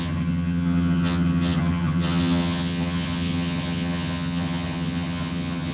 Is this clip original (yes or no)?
no